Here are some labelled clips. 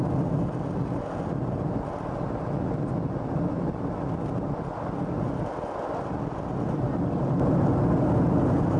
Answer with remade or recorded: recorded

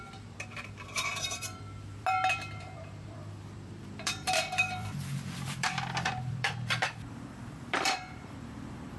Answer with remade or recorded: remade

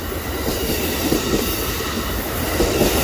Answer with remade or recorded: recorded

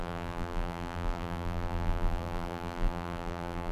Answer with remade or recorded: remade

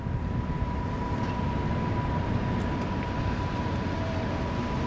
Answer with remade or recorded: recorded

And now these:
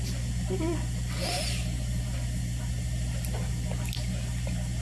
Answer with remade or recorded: recorded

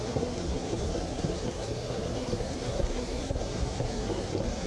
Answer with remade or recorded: remade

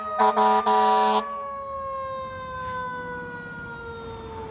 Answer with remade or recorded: recorded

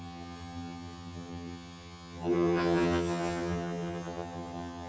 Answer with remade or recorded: remade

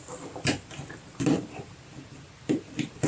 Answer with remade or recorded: recorded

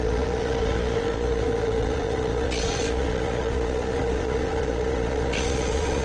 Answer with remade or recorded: remade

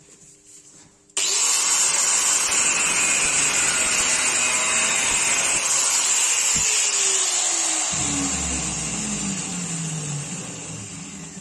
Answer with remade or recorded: recorded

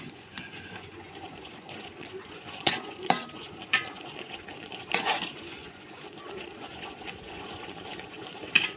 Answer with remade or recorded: remade